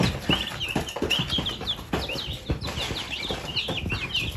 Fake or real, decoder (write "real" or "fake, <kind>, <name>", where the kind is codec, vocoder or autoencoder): real